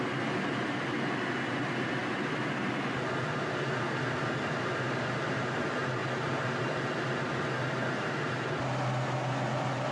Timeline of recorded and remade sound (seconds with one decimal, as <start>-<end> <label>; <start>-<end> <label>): 0.0-6.0 recorded; 6.0-6.9 remade; 6.9-9.9 recorded